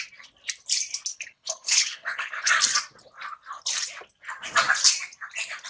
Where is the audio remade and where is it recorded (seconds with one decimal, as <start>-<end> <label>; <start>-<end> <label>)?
0.0-1.1 recorded; 1.1-2.5 remade; 2.5-5.7 recorded